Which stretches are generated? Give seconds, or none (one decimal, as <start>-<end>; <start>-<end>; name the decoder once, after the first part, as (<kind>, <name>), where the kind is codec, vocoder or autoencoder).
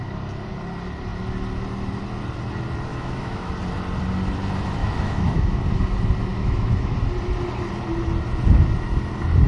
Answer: 2.9-3.5 (autoencoder, DAC-VAE); 4.8-5.6; 6.3-7.0